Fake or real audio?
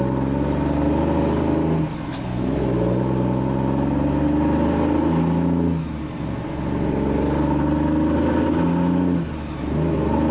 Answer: real